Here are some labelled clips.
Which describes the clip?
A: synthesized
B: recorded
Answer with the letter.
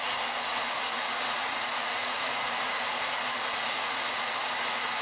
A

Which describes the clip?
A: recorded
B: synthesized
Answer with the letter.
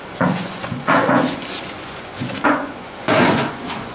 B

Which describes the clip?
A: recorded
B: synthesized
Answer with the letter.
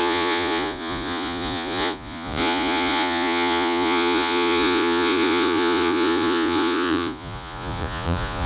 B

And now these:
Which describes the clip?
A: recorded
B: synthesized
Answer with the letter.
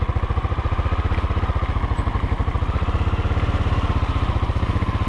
A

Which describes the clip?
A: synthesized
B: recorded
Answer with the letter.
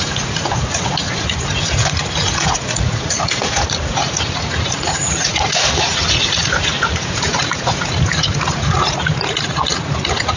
A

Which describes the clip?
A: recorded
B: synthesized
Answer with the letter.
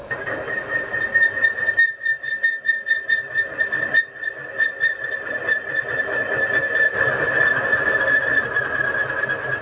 A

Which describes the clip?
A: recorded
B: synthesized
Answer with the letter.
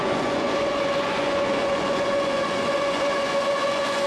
B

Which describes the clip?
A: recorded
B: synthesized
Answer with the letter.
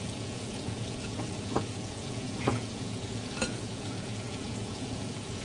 B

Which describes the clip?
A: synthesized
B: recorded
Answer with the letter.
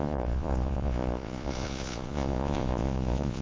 A